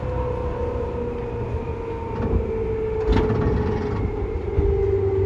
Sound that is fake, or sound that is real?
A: real